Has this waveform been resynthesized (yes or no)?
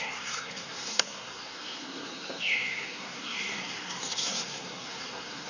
yes